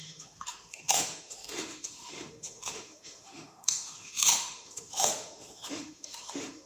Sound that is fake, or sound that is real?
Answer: fake